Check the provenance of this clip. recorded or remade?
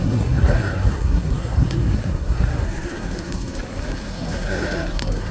remade